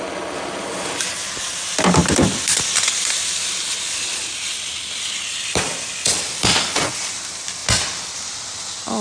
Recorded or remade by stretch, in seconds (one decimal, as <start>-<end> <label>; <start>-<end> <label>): 0.0-2.0 recorded; 2.0-6.4 remade; 6.4-9.0 recorded